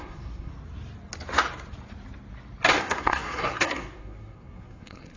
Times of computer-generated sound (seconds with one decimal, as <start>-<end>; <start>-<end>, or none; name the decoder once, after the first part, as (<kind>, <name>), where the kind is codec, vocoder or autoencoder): 0.0-0.5 (codec, SNAC); 2.8-5.2